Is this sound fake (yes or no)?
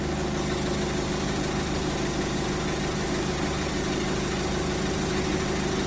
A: no